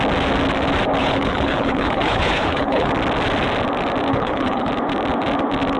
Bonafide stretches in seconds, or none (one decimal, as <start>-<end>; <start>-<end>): 0.0-1.0; 2.9-4.1; 4.7-5.8